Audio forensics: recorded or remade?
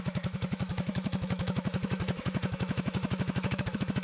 remade